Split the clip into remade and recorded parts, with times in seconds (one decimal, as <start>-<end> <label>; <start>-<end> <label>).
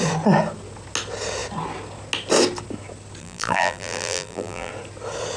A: 0.0-3.2 recorded; 3.2-4.7 remade; 4.7-5.4 recorded